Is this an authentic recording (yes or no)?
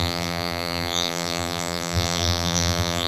no